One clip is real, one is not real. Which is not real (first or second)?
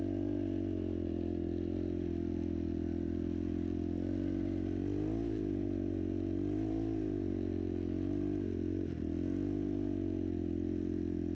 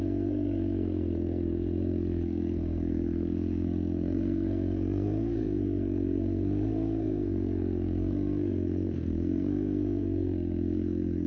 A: second